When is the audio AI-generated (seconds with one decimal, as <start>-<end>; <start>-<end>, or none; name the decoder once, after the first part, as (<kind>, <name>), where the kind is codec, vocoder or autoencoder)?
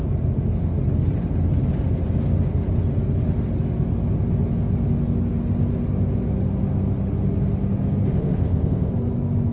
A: 8.1-8.9 (codec, ZipCodec)